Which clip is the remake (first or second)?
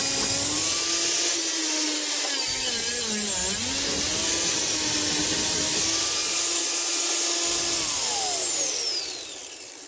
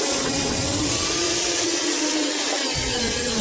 second